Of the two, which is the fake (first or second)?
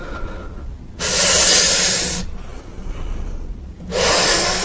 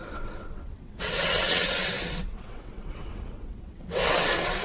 second